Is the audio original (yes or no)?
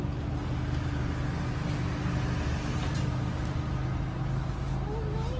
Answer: yes